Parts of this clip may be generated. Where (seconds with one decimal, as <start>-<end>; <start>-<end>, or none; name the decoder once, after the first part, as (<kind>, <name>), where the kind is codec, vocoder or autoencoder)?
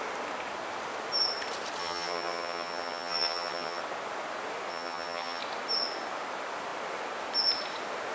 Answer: 1.8-3.8 (vocoder, HiFi-GAN); 4.7-5.4